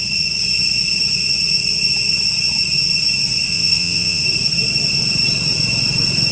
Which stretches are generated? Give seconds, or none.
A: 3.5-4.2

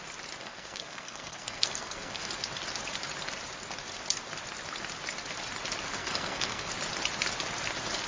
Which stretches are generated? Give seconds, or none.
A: 0.4-2.3; 6.0-6.7

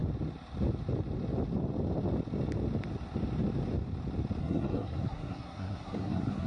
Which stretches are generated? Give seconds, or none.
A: 4.4-6.5

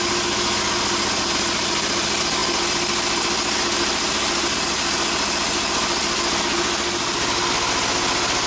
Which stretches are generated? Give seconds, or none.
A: none

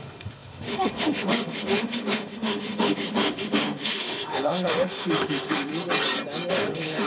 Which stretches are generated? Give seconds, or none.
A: 0.0-5.7; 6.5-7.1

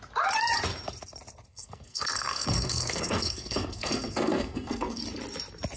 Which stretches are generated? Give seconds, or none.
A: 1.5-5.0

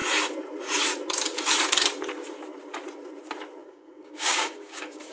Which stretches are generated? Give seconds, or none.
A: 3.6-5.1